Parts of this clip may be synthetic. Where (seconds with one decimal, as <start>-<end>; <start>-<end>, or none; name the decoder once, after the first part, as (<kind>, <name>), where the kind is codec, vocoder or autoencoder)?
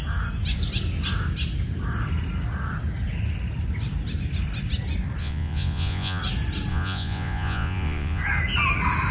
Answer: 5.2-6.2 (vocoder, Vocos); 6.7-8.2